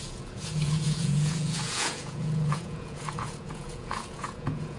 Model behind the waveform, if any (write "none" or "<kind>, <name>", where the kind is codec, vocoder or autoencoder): vocoder, Vocos